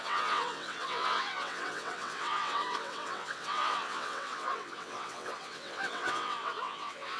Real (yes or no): no